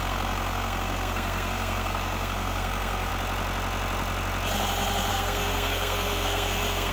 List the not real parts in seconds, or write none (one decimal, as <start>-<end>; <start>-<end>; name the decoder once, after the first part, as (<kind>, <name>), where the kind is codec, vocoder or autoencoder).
0.0-3.1 (codec, SNAC); 5.1-6.9